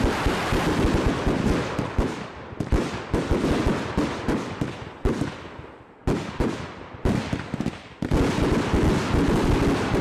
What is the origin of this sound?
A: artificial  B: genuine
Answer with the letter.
B